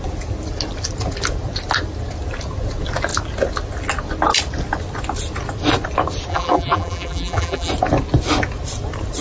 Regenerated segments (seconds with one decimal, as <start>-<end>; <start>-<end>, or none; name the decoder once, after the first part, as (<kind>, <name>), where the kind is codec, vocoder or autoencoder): 6.3-7.7 (vocoder, BigVGAN v2)